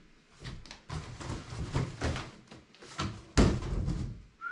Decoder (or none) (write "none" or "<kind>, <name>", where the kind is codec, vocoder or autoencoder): none